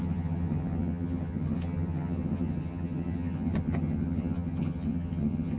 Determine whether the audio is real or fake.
fake